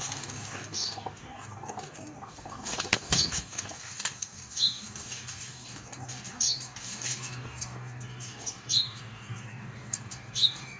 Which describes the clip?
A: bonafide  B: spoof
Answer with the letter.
B